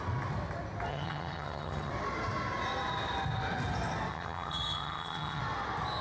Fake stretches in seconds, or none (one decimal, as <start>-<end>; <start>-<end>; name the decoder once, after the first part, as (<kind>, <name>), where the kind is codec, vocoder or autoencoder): 0.9-1.9 (vocoder, HiFi-GAN); 4.1-5.4